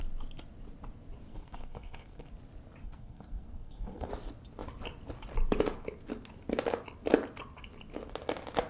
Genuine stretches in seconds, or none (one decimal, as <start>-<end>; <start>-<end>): 0.0-1.3; 2.3-2.8; 4.1-8.7